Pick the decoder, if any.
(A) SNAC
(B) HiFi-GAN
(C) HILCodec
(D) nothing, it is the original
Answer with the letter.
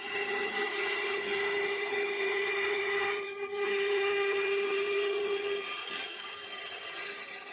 B